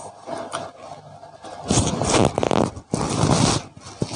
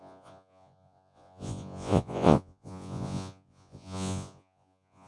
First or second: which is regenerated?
second